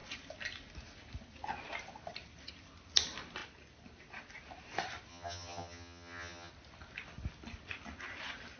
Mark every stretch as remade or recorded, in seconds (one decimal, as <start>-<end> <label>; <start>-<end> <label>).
0.0-5.1 recorded; 5.1-6.5 remade; 6.5-8.6 recorded